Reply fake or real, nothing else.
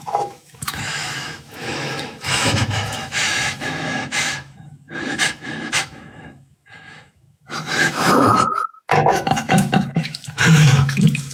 fake